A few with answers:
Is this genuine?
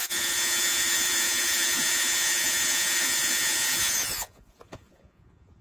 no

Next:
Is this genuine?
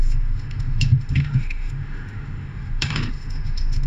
no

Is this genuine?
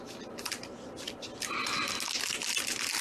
yes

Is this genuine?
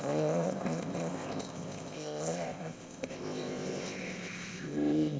no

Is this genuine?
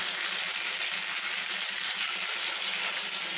yes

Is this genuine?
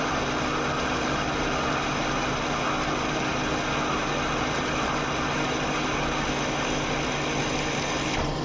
yes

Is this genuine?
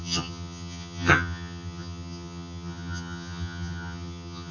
no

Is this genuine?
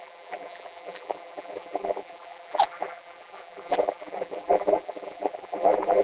no